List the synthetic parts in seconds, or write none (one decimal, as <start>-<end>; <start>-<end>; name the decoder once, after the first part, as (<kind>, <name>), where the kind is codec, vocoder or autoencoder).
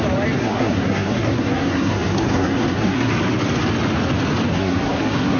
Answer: 0.4-3.1 (codec, SNAC); 4.5-5.4